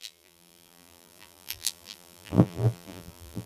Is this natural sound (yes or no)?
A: no